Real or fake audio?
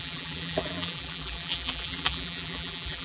fake